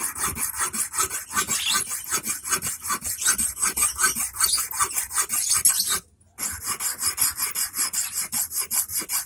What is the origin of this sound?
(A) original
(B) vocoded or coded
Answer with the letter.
A